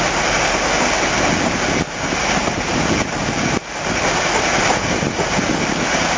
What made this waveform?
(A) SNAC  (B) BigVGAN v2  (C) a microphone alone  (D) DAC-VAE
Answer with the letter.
C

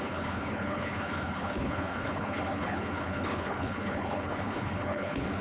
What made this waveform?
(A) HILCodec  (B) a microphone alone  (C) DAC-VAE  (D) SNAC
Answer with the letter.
A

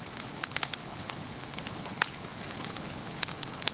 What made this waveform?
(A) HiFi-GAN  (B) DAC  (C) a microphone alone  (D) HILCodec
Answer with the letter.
D